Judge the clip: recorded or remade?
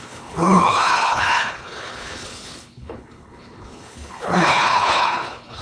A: remade